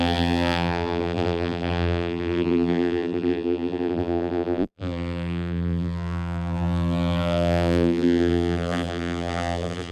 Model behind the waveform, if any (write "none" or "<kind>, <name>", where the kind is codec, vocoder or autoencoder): vocoder, BigVGAN v2